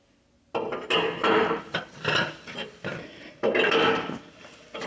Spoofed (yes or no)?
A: no